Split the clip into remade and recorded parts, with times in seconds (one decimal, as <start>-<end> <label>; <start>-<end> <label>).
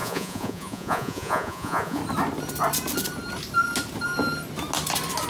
0.0-2.0 remade; 2.0-5.3 recorded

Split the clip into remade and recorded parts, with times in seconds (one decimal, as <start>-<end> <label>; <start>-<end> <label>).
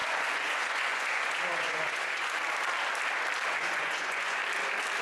0.0-2.4 remade; 2.4-3.5 recorded; 3.5-4.4 remade; 4.4-5.0 recorded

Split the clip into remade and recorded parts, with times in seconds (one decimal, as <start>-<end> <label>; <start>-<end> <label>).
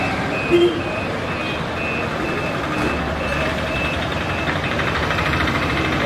0.0-1.4 remade; 1.4-3.2 recorded; 3.2-4.1 remade; 4.1-4.7 recorded; 4.7-6.1 remade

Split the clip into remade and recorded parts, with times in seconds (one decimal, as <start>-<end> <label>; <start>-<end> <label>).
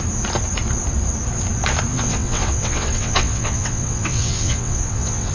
0.0-1.9 recorded; 1.9-5.3 remade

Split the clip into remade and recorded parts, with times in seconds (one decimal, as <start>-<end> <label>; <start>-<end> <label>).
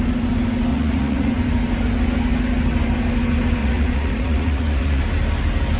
0.0-0.7 recorded; 0.7-1.3 remade; 1.3-3.6 recorded; 3.6-5.0 remade; 5.0-5.8 recorded